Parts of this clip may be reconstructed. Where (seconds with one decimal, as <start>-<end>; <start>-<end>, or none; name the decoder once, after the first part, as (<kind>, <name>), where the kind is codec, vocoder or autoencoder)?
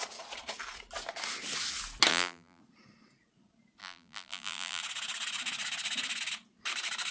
2.1-2.6 (vocoder, BigVGAN v2); 3.8-4.8